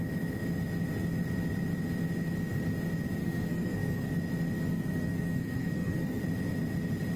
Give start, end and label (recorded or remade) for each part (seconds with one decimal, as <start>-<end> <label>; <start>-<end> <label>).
0.0-3.2 recorded; 3.2-4.1 remade; 4.1-4.7 recorded; 4.7-6.2 remade; 6.2-7.2 recorded